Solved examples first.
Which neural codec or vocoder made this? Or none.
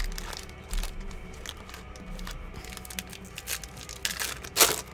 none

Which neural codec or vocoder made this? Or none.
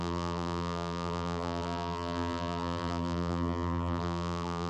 vocoder, BigVGAN v2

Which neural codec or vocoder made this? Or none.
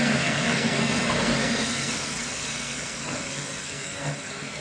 codec, SNAC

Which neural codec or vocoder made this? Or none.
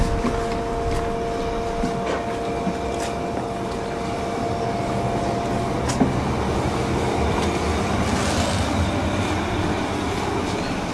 none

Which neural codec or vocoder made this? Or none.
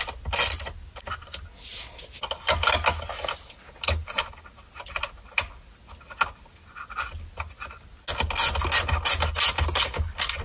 none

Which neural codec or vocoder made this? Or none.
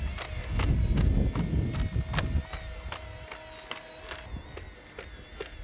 none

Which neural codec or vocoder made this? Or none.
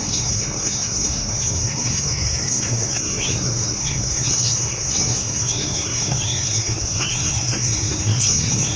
codec, SNAC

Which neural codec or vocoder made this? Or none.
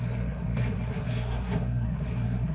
codec, SNAC